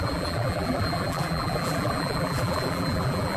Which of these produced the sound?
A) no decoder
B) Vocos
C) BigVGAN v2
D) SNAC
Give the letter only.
C